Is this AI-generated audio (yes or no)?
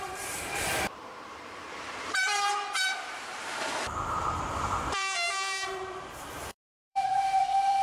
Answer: yes